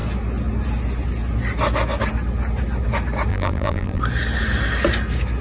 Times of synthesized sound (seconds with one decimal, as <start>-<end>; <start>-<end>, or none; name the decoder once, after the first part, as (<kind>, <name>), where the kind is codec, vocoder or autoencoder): 3.3-4.0 (vocoder, BigVGAN v2)